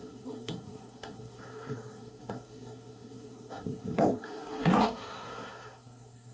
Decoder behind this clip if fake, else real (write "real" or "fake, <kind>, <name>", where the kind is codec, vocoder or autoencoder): fake, codec, SNAC